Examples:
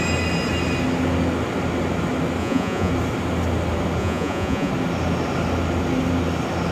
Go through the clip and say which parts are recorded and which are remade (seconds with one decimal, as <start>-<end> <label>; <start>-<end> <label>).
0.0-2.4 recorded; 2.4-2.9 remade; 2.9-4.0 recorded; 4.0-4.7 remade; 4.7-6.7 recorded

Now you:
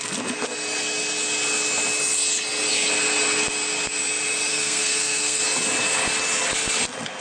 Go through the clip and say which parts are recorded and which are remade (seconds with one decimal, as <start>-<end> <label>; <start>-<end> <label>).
0.0-4.5 recorded; 4.5-5.4 remade; 5.4-7.2 recorded

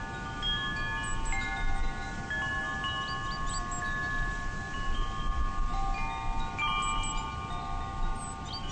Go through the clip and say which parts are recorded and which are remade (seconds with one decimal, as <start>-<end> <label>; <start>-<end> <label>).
0.0-8.7 recorded

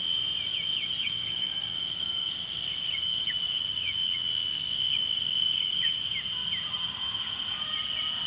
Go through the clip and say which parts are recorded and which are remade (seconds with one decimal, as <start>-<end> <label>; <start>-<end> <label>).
0.0-1.0 recorded; 1.0-6.0 remade; 6.0-8.3 recorded

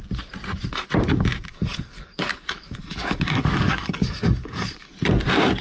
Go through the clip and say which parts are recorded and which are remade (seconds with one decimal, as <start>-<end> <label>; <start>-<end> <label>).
0.0-1.5 recorded; 1.5-4.9 remade; 4.9-5.6 recorded

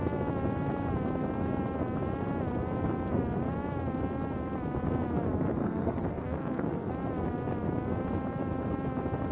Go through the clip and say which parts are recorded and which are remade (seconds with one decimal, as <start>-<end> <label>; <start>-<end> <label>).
0.0-5.6 recorded; 5.6-6.9 remade; 6.9-9.3 recorded